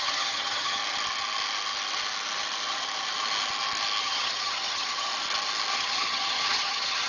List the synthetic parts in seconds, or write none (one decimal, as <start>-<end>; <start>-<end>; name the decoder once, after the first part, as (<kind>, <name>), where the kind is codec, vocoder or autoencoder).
0.0-0.8 (vocoder, HiFi-GAN); 4.0-5.1; 5.7-7.1